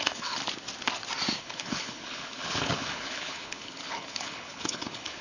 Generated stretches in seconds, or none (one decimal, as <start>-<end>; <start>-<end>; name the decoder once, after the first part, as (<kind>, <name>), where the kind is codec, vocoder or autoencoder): 0.0-0.4 (codec, HILCodec); 1.4-5.2